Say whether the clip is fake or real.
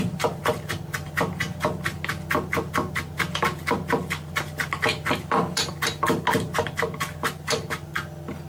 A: real